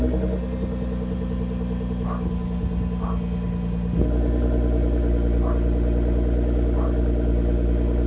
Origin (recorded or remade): recorded